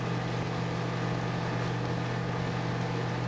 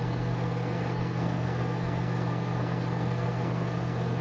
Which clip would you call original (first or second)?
first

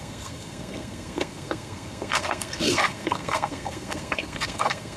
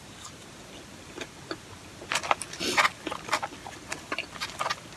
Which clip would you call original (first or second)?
second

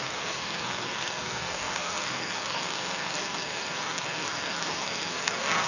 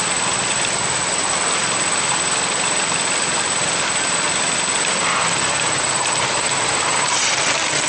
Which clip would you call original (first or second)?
second